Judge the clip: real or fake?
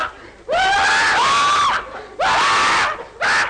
real